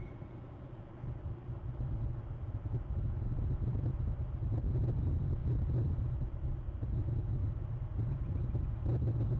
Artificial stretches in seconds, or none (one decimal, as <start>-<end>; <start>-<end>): none